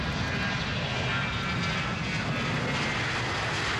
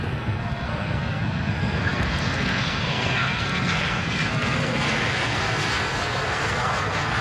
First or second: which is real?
first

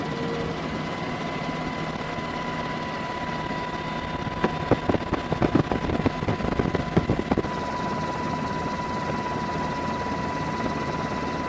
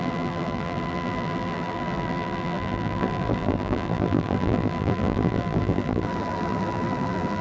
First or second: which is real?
first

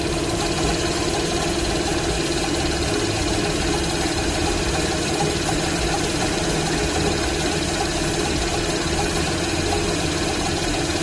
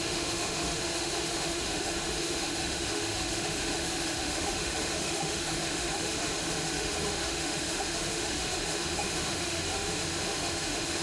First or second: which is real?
first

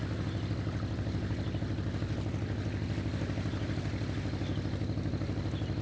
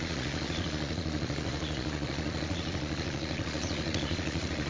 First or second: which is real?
first